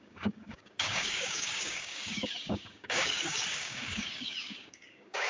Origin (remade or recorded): remade